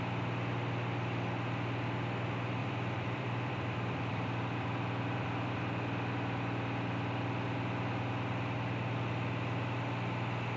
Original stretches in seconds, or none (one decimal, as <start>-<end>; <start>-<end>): 0.0-2.6; 5.6-10.6